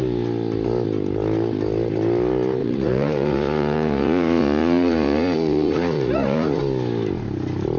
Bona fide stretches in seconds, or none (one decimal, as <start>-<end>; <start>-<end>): 0.0-2.6; 6.6-7.8